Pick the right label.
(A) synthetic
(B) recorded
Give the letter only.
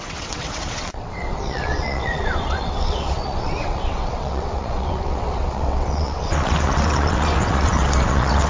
A